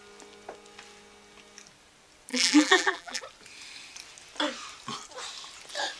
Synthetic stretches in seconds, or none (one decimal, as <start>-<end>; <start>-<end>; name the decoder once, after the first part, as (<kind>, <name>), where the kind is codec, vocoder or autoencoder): 2.3-3.2 (vocoder, BigVGAN v2)